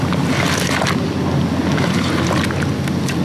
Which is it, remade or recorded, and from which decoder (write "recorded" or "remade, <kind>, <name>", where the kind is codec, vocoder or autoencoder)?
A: recorded